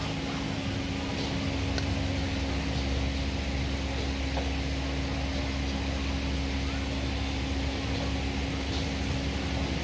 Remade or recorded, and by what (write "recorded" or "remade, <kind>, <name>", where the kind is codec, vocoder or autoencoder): recorded